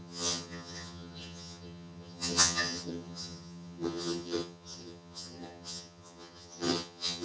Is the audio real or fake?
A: fake